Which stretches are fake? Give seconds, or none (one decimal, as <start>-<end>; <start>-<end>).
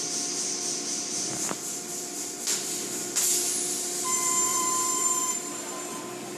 4.5-5.7